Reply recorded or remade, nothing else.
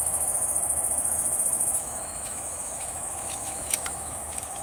remade